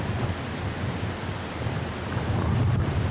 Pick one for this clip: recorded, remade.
recorded